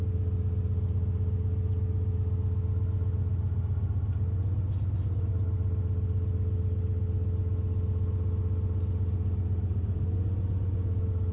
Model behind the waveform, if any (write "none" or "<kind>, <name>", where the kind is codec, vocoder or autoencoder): none